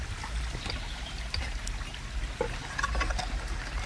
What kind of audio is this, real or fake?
real